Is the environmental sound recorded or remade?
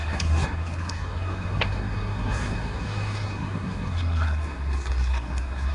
remade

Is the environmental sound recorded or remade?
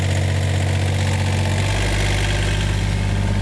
recorded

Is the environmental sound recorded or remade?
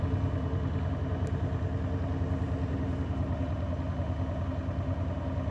recorded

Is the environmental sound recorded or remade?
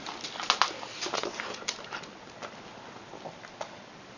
recorded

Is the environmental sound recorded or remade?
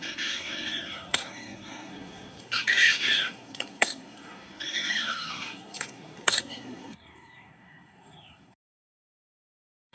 remade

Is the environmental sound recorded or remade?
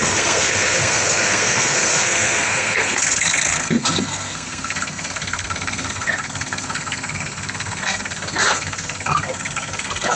remade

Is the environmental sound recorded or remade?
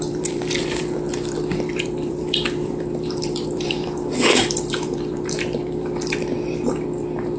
remade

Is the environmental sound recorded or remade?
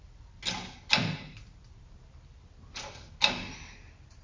recorded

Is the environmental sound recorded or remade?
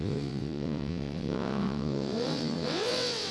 remade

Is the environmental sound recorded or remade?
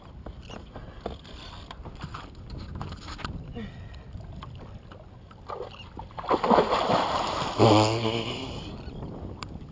recorded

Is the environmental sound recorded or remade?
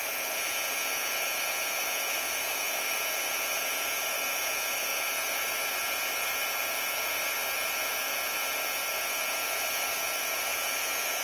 remade